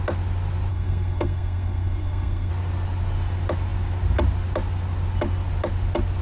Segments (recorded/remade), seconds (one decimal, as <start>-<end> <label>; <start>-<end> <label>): 0.0-0.7 recorded; 0.7-2.5 remade; 2.5-6.2 recorded